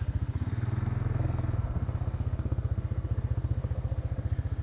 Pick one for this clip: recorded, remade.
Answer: remade